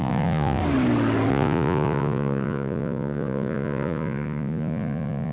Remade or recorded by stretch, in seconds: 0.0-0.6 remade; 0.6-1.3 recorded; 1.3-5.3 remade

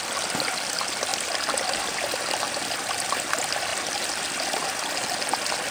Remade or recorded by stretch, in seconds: 0.0-5.7 recorded

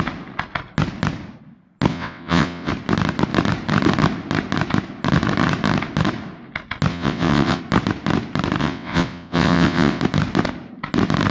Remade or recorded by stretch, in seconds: 0.0-1.9 recorded; 1.9-2.7 remade; 2.7-6.9 recorded; 6.9-7.6 remade; 7.6-8.6 recorded; 8.6-10.0 remade; 10.0-11.3 recorded